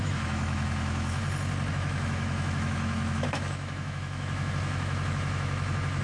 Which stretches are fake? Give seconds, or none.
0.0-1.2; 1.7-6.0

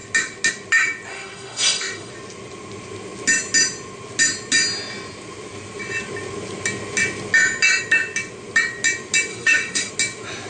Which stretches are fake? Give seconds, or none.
1.1-2.1; 9.3-9.9

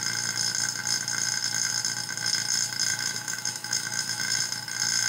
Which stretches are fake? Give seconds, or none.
2.9-4.4

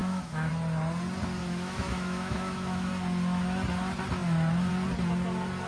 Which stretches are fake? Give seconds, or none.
0.0-0.5; 1.4-2.9